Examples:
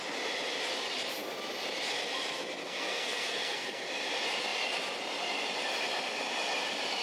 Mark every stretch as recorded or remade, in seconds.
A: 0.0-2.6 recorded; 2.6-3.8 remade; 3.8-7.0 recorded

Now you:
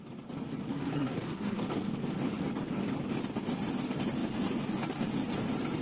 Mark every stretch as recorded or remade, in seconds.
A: 0.0-0.7 recorded; 0.7-1.6 remade; 1.6-5.8 recorded

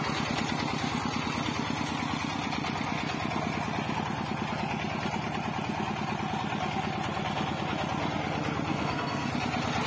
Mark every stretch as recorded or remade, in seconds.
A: 0.0-8.7 recorded; 8.7-9.3 remade; 9.3-9.9 recorded

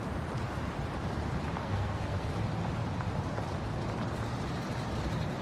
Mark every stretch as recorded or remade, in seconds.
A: 0.0-1.6 recorded; 1.6-2.3 remade; 2.3-5.4 recorded

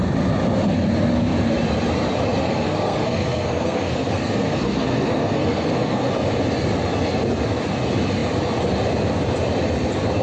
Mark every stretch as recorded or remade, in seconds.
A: 0.0-2.4 recorded; 2.4-6.1 remade; 6.1-10.2 recorded

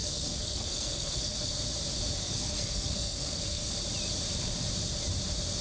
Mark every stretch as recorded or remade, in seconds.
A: 0.0-1.6 remade; 1.6-2.2 recorded; 2.2-3.7 remade; 3.7-5.6 recorded

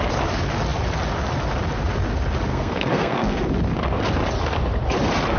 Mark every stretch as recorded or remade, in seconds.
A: 0.0-2.5 recorded; 2.5-3.4 remade; 3.4-5.4 recorded

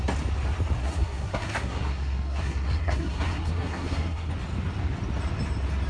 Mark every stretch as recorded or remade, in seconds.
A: 0.0-0.8 recorded; 0.8-4.3 remade; 4.3-5.9 recorded